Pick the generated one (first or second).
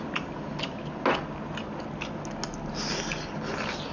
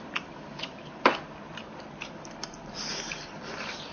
second